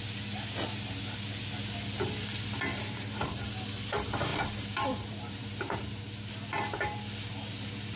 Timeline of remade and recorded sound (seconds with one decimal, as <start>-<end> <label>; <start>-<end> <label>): 0.0-2.7 recorded; 2.7-3.5 remade; 3.5-4.3 recorded; 4.3-6.0 remade; 6.0-8.0 recorded